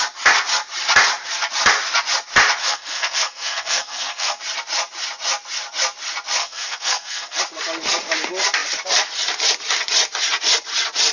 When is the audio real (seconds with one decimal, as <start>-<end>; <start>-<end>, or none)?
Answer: 0.0-2.6; 4.4-6.4; 7.4-11.1